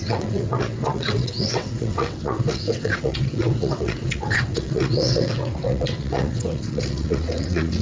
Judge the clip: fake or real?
fake